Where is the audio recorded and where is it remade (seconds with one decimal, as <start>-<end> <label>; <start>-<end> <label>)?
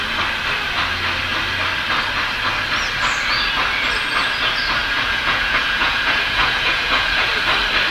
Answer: 0.0-4.8 recorded; 4.8-7.3 remade; 7.3-7.9 recorded